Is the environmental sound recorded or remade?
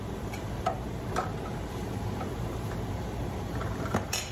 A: remade